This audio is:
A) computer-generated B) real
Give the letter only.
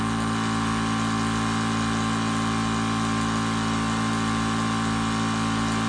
B